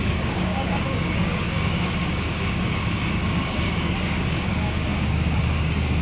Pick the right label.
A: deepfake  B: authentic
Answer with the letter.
A